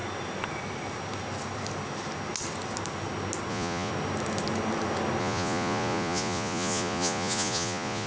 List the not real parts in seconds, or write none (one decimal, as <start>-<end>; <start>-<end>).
3.5-3.9; 5.2-8.1